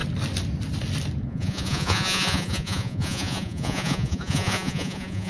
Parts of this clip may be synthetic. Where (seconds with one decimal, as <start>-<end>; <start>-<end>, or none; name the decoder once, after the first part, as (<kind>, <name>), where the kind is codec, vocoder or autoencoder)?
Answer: 1.3-5.3 (vocoder, Vocos)